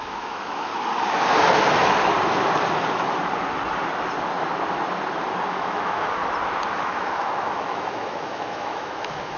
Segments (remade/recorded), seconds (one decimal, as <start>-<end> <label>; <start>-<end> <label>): 0.0-0.7 remade; 0.7-5.5 recorded; 5.5-6.2 remade; 6.2-6.8 recorded; 6.8-9.4 remade